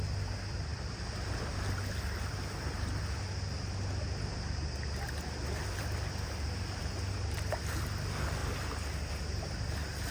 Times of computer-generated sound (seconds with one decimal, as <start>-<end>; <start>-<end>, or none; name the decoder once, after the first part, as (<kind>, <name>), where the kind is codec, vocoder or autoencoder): none